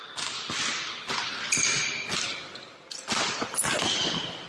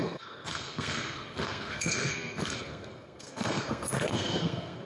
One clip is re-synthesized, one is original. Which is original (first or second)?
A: first